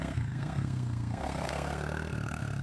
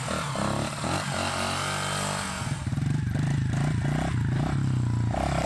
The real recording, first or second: second